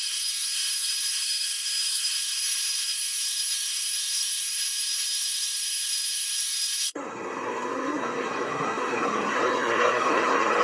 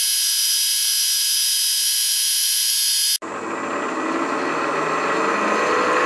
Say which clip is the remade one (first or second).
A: first